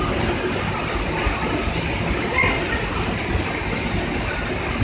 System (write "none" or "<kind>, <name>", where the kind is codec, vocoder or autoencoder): none